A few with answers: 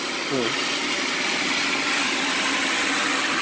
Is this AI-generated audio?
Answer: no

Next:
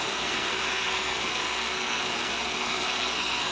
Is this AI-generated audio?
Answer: yes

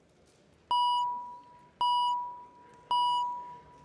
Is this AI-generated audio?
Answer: no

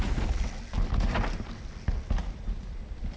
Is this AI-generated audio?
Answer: no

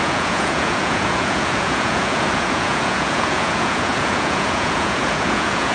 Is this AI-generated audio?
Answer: yes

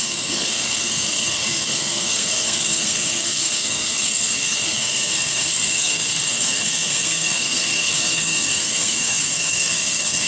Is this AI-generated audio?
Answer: yes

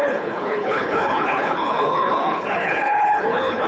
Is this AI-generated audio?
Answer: yes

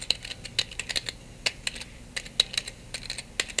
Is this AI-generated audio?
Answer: no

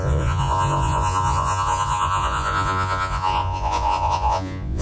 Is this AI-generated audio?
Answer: yes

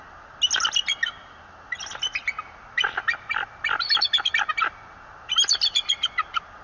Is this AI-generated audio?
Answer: no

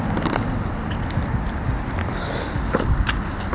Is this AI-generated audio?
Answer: no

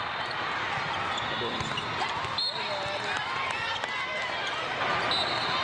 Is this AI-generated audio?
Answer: no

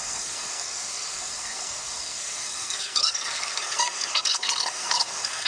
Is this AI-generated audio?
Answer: yes